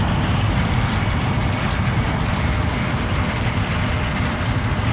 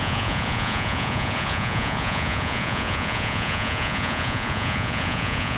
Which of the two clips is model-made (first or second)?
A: second